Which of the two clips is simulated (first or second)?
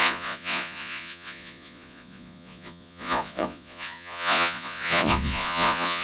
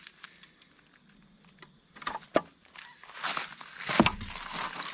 first